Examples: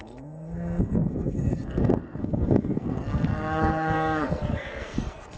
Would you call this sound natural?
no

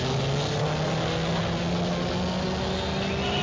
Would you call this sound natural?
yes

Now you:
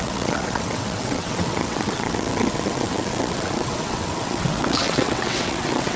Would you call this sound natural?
no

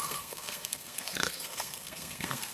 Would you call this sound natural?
no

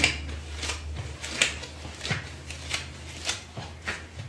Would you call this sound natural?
yes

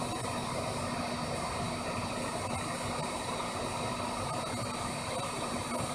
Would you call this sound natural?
yes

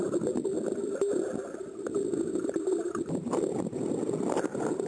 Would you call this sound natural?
no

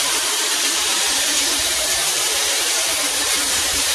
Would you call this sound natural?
no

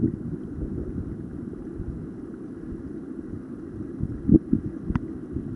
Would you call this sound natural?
yes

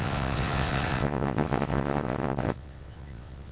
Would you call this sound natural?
no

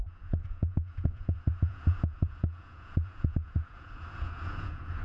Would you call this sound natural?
no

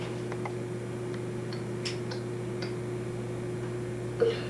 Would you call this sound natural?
yes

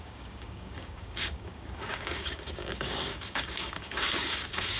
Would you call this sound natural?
no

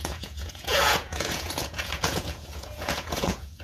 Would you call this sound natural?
no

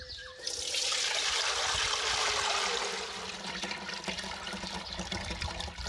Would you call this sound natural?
yes